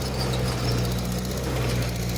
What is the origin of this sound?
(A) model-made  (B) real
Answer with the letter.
B